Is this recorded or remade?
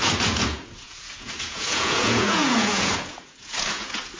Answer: remade